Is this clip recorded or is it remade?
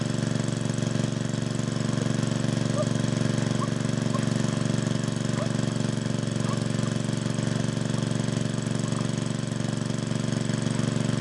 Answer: recorded